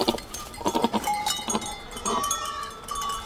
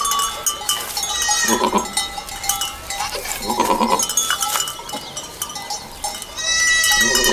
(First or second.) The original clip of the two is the second